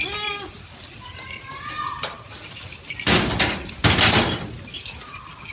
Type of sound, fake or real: real